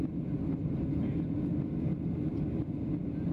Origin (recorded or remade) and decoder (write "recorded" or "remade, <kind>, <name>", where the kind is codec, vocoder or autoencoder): recorded